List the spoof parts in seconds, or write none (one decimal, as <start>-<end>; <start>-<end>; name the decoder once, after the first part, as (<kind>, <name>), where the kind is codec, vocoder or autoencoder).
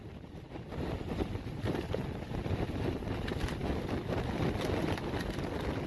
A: none